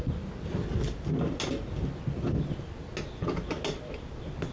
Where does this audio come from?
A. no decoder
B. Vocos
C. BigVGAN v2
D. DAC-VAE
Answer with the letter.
A